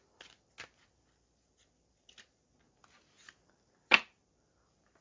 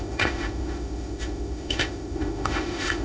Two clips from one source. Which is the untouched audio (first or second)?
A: first